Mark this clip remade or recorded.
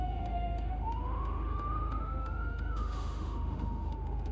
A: remade